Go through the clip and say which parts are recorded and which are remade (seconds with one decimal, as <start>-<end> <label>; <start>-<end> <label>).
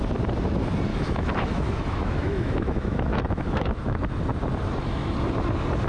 0.0-0.9 recorded; 0.9-4.1 remade; 4.1-5.9 recorded